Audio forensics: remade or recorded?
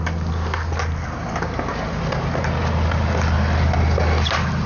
recorded